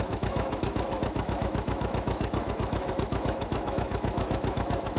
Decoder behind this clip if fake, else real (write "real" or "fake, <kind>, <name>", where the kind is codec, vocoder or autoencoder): fake, autoencoder, DAC-VAE